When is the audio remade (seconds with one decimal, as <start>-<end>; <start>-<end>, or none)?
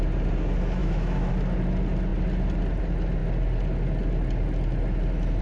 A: 0.8-1.3